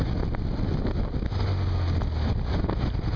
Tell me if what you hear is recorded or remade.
recorded